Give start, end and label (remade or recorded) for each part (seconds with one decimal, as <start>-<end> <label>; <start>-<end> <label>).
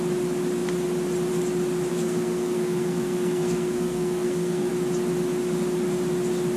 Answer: 0.0-1.9 recorded; 1.9-4.7 remade; 4.7-6.6 recorded